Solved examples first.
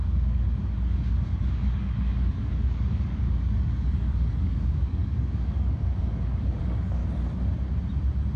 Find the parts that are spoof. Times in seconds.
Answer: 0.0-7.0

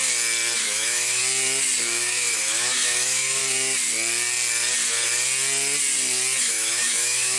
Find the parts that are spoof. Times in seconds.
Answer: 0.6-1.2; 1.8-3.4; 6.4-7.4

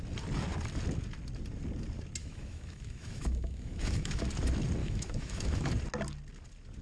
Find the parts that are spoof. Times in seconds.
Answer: 2.2-4.2; 4.8-5.7

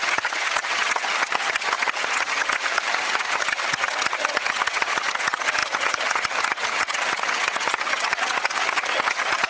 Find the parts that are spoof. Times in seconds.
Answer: 0.0-9.5

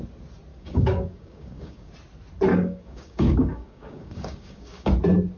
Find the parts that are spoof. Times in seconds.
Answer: 0.5-1.9; 2.5-4.9

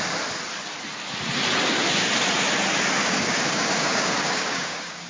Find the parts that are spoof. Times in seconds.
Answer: 3.0-5.1

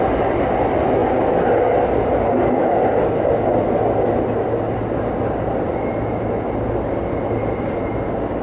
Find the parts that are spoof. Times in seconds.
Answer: none

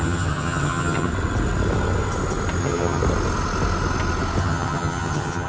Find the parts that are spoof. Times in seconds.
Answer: 0.0-1.1; 2.6-3.0; 4.4-5.5